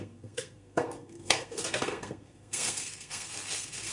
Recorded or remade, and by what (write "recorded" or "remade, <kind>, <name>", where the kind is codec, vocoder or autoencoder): remade, codec, SNAC